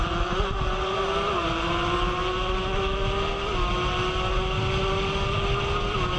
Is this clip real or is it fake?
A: real